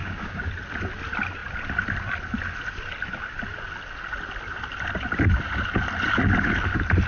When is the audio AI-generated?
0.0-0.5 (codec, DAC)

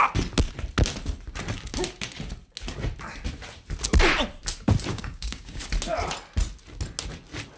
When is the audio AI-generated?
4.9-5.6 (codec, DAC)

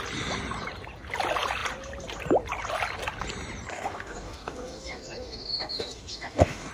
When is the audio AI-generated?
3.7-6.7 (codec, DAC)

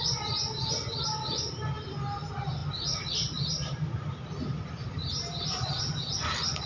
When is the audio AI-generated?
none

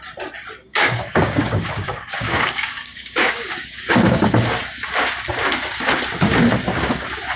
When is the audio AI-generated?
0.7-4.2 (codec, DAC)

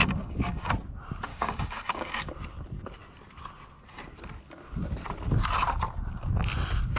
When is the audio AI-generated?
0.0-0.7 (codec, DAC); 1.3-2.3

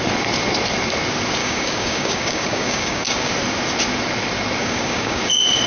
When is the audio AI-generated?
1.4-3.3 (codec, DAC); 4.6-5.2